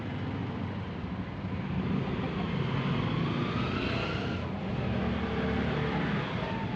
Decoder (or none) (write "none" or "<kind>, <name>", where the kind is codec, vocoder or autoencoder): none